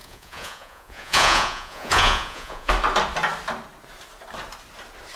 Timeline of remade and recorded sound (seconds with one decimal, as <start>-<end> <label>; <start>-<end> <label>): 0.0-2.7 remade; 2.7-5.2 recorded